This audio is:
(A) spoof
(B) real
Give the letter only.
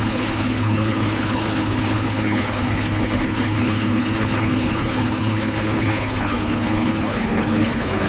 A